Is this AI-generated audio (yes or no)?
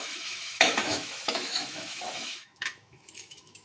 yes